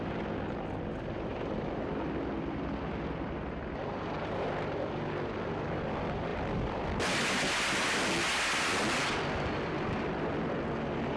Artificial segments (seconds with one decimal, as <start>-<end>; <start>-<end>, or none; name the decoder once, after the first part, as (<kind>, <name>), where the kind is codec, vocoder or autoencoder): 1.3-1.8 (vocoder, BigVGAN v2); 6.3-8.1